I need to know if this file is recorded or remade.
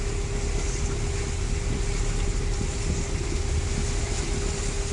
recorded